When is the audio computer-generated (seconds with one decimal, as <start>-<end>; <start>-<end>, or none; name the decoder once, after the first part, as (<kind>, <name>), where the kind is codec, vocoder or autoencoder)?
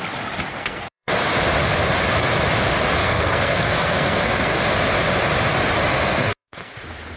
0.5-1.1 (codec, SNAC); 3.0-4.6; 5.9-6.7